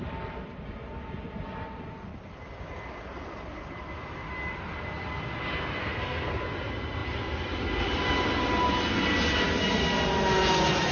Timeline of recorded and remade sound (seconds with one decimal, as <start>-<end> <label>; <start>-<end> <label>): 0.0-5.8 recorded; 5.8-6.4 remade; 6.4-10.9 recorded